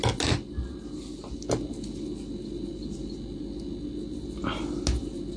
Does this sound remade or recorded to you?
recorded